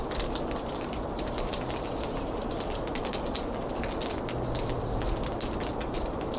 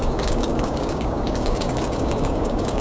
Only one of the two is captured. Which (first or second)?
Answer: first